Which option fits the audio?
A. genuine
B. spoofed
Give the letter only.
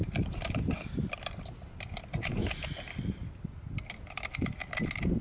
A